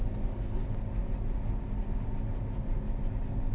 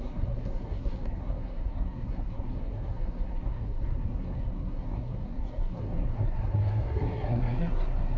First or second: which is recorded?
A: first